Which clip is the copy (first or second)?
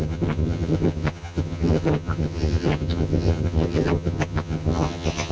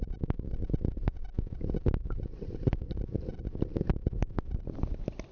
first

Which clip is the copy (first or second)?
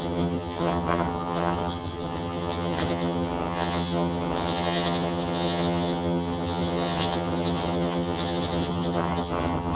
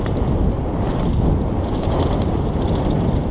first